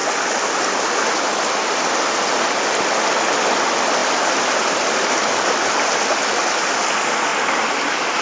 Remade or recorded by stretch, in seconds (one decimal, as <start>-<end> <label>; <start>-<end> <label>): 0.0-8.2 recorded